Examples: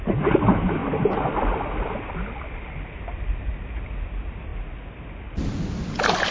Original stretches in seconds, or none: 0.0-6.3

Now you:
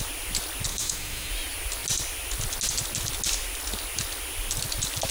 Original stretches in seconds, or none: 0.0-0.7; 1.3-5.1

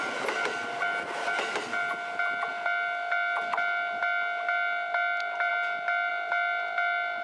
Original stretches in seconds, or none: 0.0-7.2

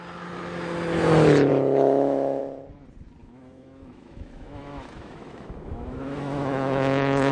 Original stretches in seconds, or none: 0.0-1.5; 2.4-3.2